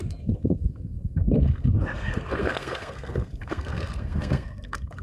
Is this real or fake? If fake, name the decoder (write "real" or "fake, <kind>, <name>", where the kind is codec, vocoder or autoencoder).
fake, codec, SNAC